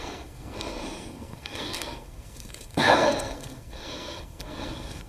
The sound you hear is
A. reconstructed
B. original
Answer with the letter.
A